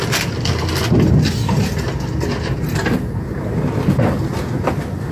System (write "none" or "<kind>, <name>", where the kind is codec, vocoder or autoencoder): none